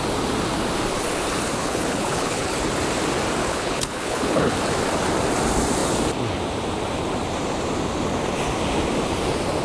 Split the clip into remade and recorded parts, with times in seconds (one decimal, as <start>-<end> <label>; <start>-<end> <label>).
0.0-1.6 recorded; 1.6-2.6 remade; 2.6-3.4 recorded; 3.4-4.5 remade; 4.5-9.6 recorded

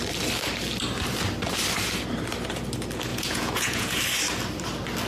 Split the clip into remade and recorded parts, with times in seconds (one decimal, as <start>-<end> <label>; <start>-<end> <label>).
0.0-3.1 recorded; 3.1-4.0 remade; 4.0-5.1 recorded

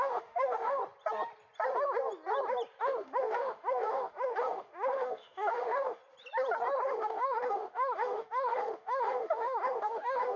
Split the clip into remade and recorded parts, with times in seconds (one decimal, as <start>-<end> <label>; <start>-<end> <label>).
0.0-0.8 remade; 0.8-2.8 recorded; 2.8-6.0 remade; 6.0-6.9 recorded; 6.9-10.4 remade

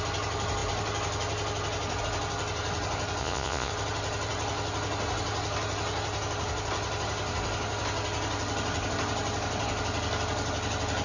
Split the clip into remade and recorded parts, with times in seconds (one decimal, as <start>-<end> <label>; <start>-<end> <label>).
0.0-3.2 recorded; 3.2-3.7 remade; 3.7-11.0 recorded

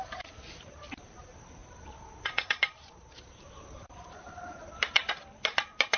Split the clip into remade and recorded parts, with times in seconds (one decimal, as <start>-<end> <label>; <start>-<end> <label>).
0.0-1.6 recorded; 1.6-4.9 remade; 4.9-6.0 recorded

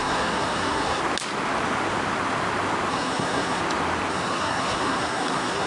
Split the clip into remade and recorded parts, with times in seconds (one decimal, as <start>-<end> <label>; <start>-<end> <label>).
0.0-1.0 remade; 1.0-2.9 recorded; 2.9-3.6 remade; 3.6-4.1 recorded; 4.1-5.7 remade